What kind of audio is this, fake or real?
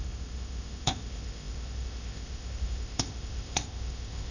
fake